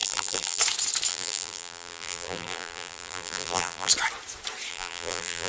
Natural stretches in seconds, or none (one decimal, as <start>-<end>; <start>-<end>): 0.6-1.1; 3.9-4.7